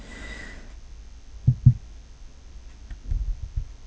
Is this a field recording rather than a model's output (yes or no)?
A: yes